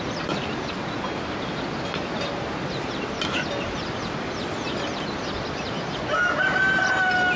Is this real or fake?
real